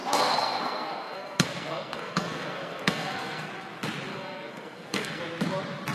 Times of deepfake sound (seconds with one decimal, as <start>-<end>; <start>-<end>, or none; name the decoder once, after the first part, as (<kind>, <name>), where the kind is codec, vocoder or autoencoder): 0.0-3.5 (codec, SNAC); 4.1-5.2